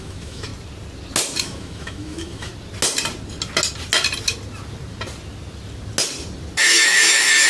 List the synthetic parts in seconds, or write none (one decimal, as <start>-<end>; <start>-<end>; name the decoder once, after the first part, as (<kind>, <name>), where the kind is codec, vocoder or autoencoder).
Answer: 0.0-0.5 (autoencoder, DAC-VAE); 1.4-2.5; 6.6-7.5